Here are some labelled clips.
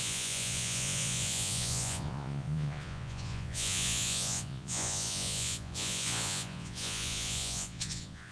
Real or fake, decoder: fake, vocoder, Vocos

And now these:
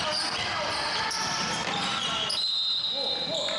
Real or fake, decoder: real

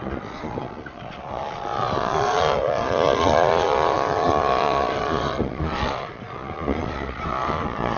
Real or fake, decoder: fake, vocoder, Vocos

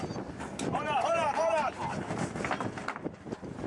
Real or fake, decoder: real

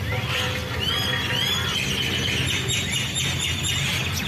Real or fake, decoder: real